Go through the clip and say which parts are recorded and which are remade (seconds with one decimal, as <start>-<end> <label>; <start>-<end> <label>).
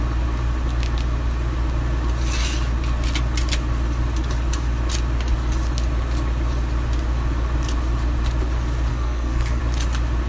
0.0-8.9 recorded; 8.9-9.6 remade; 9.6-10.3 recorded